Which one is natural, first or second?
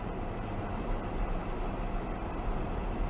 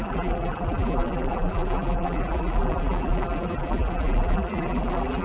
first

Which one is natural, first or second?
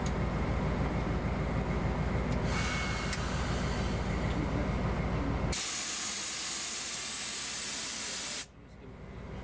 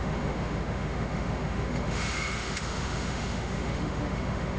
first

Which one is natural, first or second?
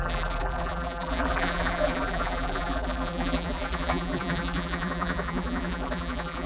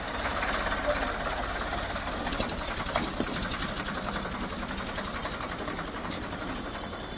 second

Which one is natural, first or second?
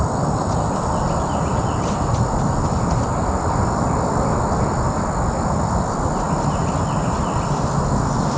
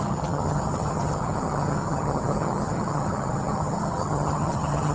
first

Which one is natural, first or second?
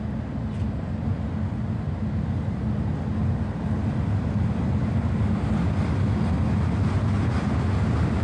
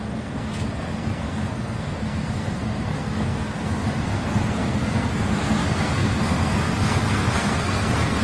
first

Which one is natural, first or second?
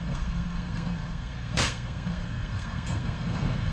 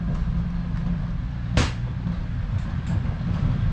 second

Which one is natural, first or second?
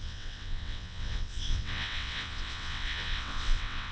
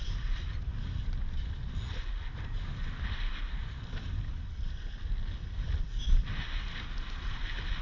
second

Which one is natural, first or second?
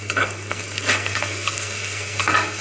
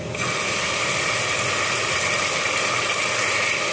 second